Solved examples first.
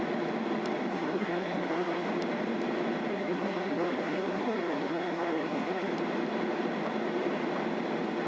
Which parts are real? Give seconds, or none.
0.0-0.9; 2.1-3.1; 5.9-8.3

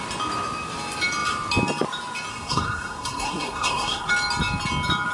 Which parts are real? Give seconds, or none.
0.0-2.3; 4.1-5.1

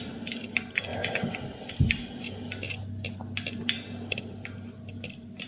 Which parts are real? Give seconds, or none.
0.0-5.5

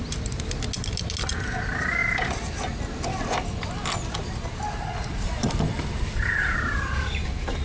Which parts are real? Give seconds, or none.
0.0-7.6

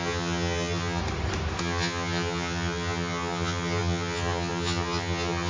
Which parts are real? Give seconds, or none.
1.0-1.6